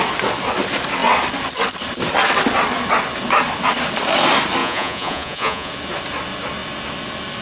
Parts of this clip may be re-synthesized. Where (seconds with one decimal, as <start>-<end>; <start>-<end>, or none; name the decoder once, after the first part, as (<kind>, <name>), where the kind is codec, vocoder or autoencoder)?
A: 4.6-5.7 (vocoder, Vocos)